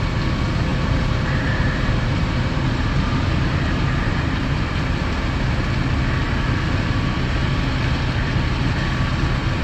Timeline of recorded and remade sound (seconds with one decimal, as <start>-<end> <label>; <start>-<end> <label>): 0.0-0.7 recorded; 0.7-4.8 remade; 4.8-9.6 recorded